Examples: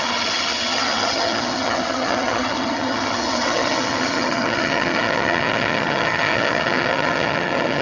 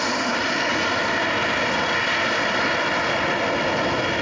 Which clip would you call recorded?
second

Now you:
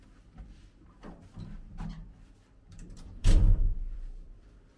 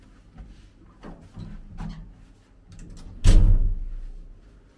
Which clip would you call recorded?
second